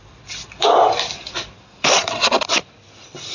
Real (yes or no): no